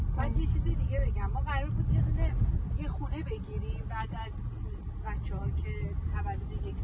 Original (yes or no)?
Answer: yes